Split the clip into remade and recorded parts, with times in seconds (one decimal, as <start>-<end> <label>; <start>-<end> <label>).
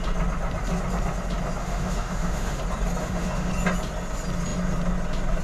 0.0-1.6 recorded; 1.6-2.6 remade; 2.6-3.0 recorded; 3.0-3.5 remade; 3.5-5.4 recorded